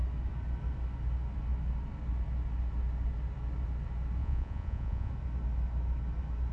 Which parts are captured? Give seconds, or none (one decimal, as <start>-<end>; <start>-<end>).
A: 0.0-4.2; 5.1-6.5